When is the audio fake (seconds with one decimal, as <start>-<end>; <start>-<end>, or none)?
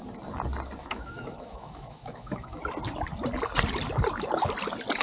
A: 0.8-2.6